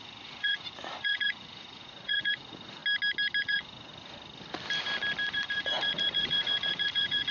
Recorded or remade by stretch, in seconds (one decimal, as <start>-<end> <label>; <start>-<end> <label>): 0.0-2.8 remade; 2.8-3.4 recorded; 3.4-3.9 remade; 3.9-5.3 recorded; 5.3-7.3 remade